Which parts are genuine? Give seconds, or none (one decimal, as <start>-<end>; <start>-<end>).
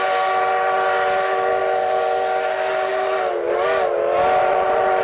0.0-4.4